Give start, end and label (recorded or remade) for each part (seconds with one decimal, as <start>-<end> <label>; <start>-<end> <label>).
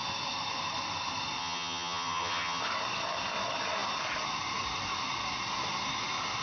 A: 0.0-1.4 recorded; 1.4-2.6 remade; 2.6-6.4 recorded